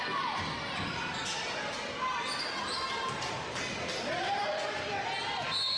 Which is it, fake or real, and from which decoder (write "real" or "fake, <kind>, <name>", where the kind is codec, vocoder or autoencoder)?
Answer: real